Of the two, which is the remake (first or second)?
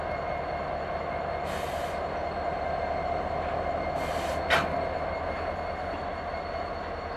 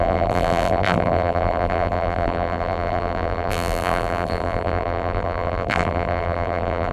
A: second